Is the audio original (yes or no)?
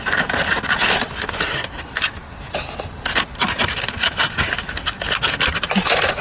yes